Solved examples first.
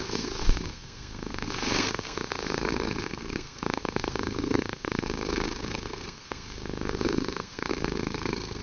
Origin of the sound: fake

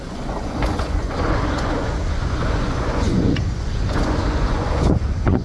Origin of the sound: fake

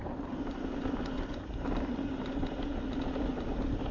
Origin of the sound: real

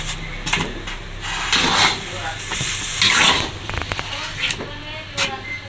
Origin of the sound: real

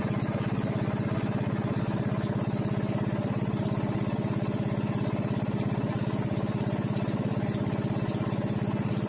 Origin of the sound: real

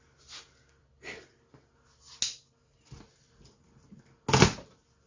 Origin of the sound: real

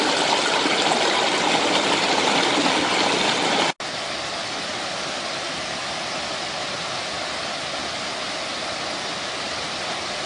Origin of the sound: real